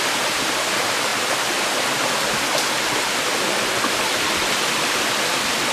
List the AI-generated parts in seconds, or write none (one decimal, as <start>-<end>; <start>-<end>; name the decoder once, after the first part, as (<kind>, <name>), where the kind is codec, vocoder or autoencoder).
none